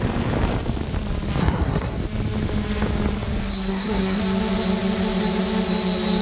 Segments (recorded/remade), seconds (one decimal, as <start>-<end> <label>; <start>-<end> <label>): 0.0-1.4 recorded; 1.4-2.0 remade; 2.0-3.5 recorded; 3.5-4.2 remade; 4.2-6.2 recorded